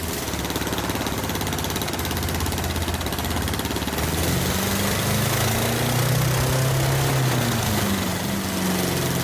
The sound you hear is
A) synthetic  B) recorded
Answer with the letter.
B